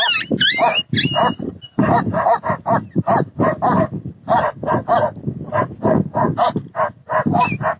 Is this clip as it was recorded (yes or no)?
yes